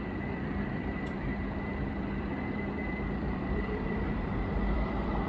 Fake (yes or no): yes